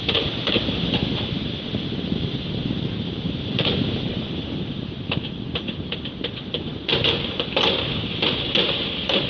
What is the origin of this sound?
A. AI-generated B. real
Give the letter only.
A